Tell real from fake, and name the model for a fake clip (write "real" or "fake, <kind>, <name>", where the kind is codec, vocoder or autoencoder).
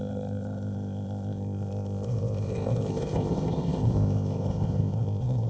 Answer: fake, codec, ZipCodec